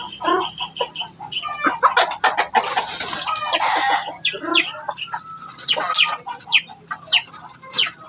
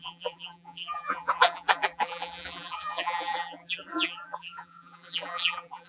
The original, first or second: first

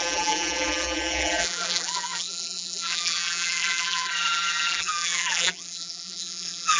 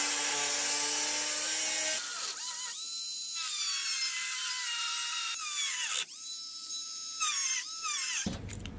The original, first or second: second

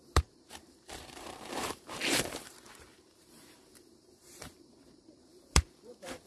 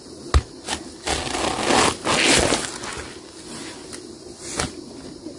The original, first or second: second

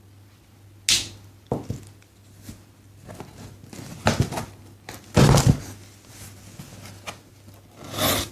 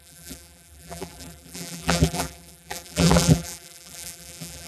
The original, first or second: first